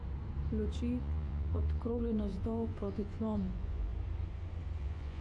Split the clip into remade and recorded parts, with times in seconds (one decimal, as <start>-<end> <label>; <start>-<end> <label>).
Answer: 0.0-1.0 recorded; 1.0-3.9 remade; 3.9-4.8 recorded; 4.8-5.2 remade